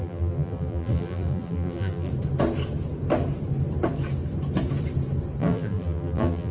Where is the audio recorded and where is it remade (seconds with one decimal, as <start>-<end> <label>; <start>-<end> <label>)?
0.0-2.1 remade; 2.1-5.4 recorded; 5.4-6.5 remade